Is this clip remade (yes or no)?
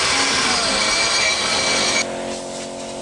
no